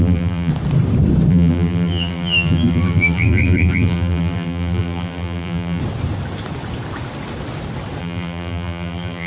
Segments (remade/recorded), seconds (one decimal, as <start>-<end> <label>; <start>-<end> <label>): 0.0-0.5 remade; 0.5-1.3 recorded; 1.3-5.8 remade; 5.8-8.0 recorded; 8.0-9.3 remade